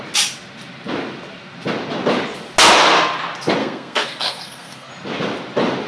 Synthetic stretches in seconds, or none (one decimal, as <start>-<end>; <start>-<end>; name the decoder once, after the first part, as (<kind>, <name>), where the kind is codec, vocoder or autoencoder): 3.6-4.9 (codec, SNAC)